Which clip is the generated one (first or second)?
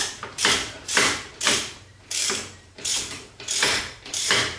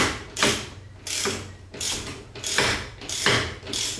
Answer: first